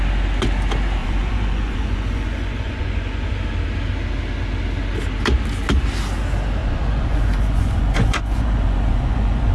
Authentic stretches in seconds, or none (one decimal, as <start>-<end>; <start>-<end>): 0.0-1.0; 3.3-6.6